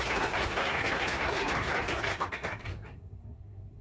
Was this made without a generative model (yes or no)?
no